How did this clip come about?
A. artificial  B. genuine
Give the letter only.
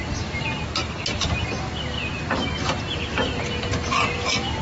B